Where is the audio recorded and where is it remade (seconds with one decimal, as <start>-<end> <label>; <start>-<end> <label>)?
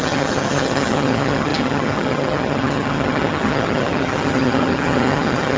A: 0.0-5.6 remade